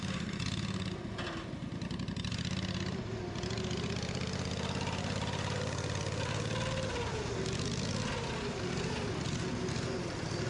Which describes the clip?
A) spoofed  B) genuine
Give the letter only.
B